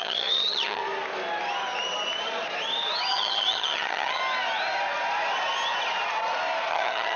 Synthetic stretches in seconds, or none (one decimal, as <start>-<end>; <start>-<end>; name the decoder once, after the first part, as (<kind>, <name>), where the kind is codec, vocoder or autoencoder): 0.0-0.8 (vocoder, HiFi-GAN); 3.1-4.2; 6.7-7.2